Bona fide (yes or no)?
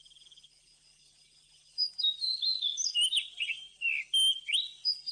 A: yes